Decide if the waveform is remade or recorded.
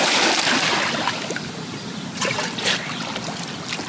recorded